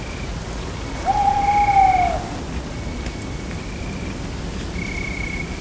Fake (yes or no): no